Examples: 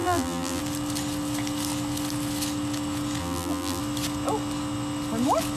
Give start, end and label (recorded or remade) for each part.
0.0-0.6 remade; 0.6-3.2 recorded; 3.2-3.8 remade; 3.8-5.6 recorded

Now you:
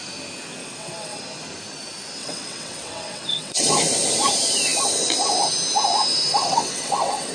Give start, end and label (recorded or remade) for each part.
0.0-0.6 recorded; 0.6-1.2 remade; 1.2-2.2 recorded; 2.2-3.7 remade; 3.7-6.3 recorded; 6.3-7.3 remade

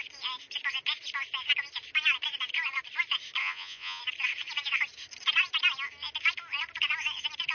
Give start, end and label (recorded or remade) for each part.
0.0-3.4 recorded; 3.4-4.0 remade; 4.0-7.5 recorded

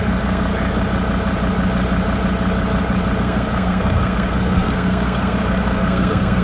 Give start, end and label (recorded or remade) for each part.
0.0-0.5 remade; 0.5-3.2 recorded; 3.2-6.4 remade

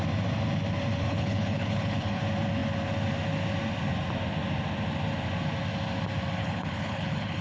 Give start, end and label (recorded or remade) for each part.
0.0-1.0 recorded; 1.0-2.2 remade; 2.2-6.4 recorded; 6.4-7.4 remade

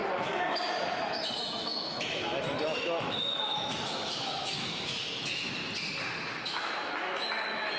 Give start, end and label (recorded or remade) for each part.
0.0-5.6 remade; 5.6-6.3 recorded; 6.3-7.8 remade